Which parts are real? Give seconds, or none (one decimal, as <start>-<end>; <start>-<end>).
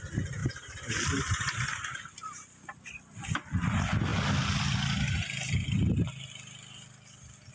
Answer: 0.0-0.4; 1.2-7.5